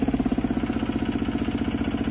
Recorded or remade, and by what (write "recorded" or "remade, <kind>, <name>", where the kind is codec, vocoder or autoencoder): recorded